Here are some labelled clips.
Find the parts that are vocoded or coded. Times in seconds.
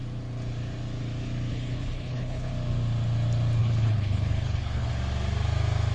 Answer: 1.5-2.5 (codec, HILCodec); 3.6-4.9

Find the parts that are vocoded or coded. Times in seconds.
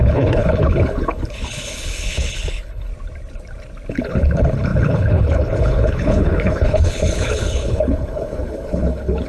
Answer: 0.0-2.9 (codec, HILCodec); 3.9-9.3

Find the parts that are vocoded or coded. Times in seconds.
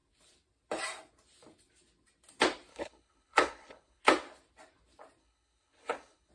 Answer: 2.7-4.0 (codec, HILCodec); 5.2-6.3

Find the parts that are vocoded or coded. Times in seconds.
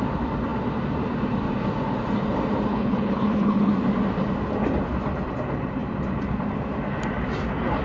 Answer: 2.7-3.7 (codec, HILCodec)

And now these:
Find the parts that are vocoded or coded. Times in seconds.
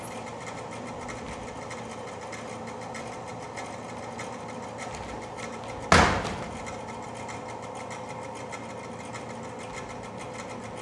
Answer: none